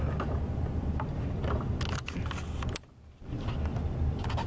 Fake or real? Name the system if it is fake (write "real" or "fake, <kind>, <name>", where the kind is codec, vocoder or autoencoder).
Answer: real